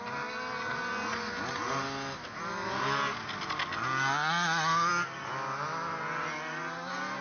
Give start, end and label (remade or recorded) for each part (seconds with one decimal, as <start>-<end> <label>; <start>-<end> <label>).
0.0-7.2 recorded